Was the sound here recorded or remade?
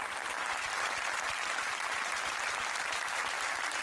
recorded